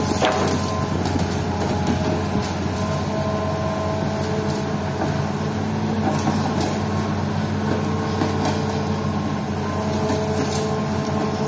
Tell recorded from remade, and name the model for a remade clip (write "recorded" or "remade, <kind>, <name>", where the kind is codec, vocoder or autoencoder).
recorded